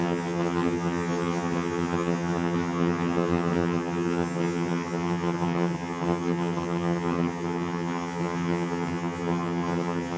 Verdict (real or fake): fake